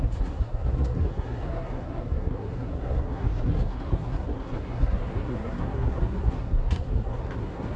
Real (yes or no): no